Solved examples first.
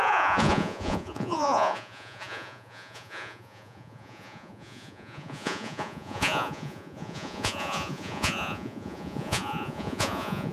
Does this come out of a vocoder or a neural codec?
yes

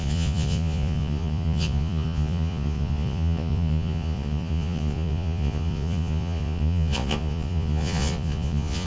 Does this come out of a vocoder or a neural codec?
yes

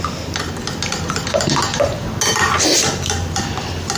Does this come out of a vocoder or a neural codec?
no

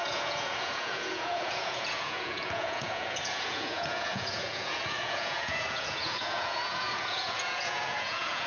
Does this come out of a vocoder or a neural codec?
yes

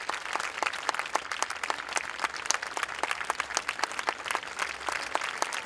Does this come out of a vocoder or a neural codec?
no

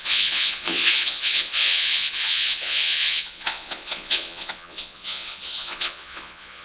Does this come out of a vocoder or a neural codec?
yes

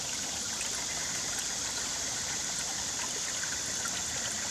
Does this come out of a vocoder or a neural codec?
no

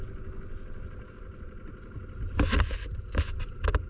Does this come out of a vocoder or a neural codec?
no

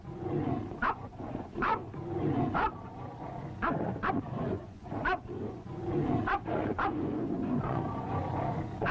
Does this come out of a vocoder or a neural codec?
yes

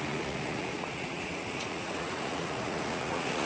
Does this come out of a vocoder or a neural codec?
yes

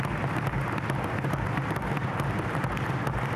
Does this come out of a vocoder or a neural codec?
no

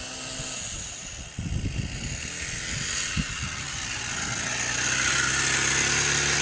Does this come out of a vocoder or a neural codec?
no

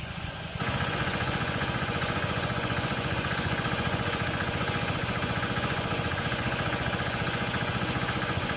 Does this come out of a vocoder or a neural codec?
yes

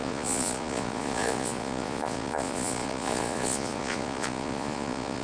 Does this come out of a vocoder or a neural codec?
yes